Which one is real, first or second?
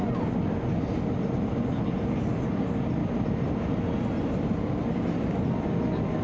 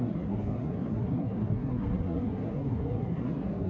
first